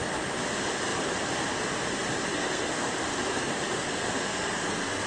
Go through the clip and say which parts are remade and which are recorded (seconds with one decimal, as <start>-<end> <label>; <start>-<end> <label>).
0.0-2.3 recorded; 2.3-2.9 remade; 2.9-3.3 recorded; 3.3-5.1 remade